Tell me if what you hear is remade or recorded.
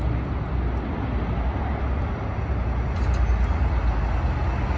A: recorded